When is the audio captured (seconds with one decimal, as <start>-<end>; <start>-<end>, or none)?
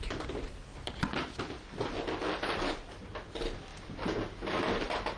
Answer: 0.0-5.2